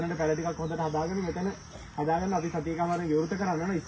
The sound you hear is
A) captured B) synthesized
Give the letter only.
A